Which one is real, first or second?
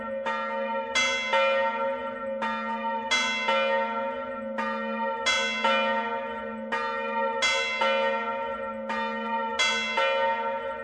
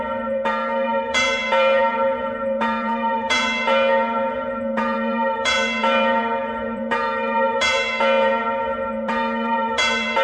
first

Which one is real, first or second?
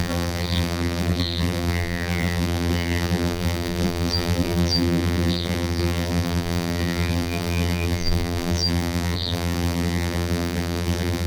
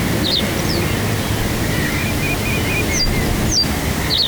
second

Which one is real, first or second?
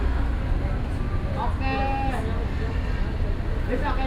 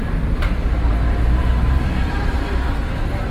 first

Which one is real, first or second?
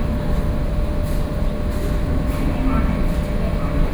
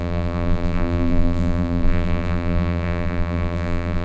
first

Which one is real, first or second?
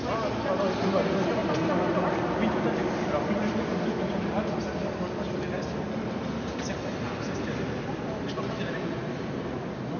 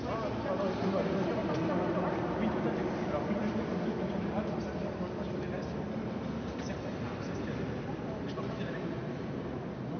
first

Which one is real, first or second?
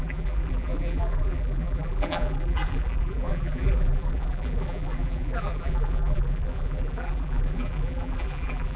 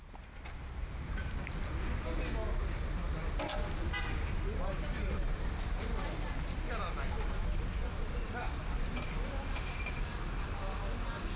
second